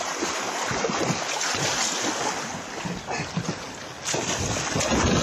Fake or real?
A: real